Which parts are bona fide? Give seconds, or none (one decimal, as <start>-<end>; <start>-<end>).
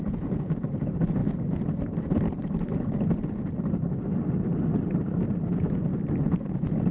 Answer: 1.2-5.3; 5.9-6.5